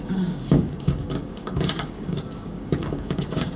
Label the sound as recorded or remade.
remade